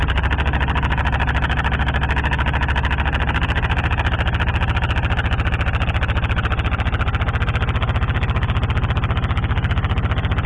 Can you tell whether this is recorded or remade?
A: recorded